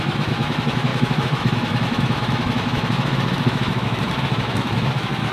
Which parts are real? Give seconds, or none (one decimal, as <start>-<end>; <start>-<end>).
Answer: none